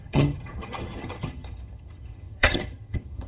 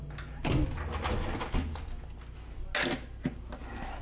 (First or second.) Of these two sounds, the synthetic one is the first